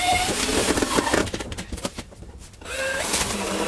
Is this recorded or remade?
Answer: remade